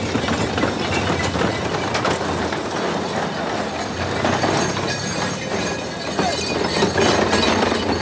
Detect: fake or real real